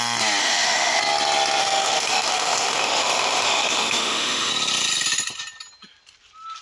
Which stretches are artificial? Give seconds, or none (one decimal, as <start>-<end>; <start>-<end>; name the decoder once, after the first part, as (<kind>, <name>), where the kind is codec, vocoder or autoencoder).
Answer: 0.4-1.0 (autoencoder, DAC-VAE); 1.6-4.5